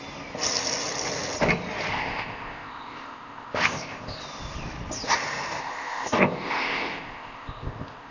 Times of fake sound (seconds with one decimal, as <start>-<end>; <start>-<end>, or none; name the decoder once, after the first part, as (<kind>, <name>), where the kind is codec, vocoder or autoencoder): 1.9-4.2 (codec, ZipCodec); 5.6-8.1